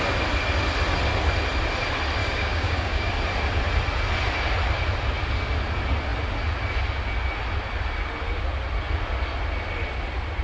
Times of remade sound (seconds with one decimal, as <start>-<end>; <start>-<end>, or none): 2.2-3.1